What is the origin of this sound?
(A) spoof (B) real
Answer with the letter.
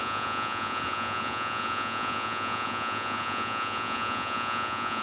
A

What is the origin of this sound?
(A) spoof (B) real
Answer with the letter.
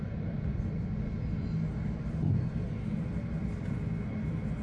B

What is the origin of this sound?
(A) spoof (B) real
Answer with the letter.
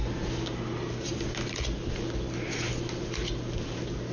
B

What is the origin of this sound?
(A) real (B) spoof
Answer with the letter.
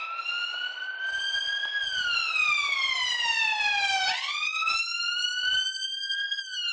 A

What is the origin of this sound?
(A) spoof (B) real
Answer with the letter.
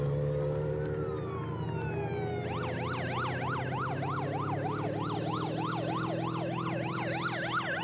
B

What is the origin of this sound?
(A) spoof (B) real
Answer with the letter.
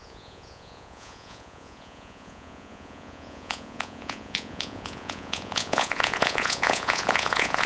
A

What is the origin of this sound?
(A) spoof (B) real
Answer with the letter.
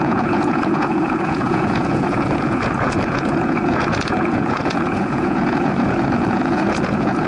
A